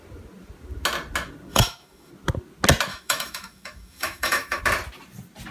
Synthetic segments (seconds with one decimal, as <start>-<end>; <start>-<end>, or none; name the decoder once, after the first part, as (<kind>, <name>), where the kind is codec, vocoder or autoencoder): 1.5-2.1 (autoencoder, DAC-VAE); 2.9-4.6

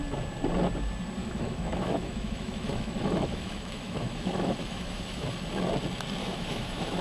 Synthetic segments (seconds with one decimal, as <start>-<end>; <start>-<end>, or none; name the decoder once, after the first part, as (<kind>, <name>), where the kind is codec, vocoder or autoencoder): 1.2-5.3 (autoencoder, DAC-VAE); 6.2-7.0